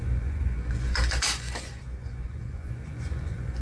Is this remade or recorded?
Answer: remade